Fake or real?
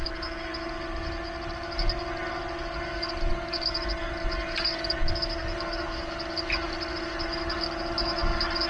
real